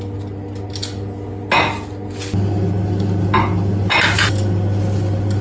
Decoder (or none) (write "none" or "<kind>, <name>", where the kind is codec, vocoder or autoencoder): none